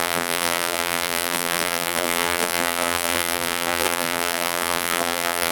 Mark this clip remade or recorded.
remade